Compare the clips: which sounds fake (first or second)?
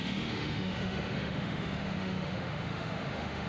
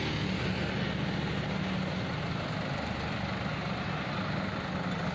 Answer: first